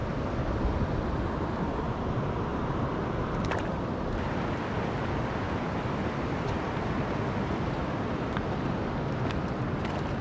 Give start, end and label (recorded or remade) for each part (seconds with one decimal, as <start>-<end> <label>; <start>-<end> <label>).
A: 0.0-2.5 recorded; 2.5-7.7 remade; 7.7-10.2 recorded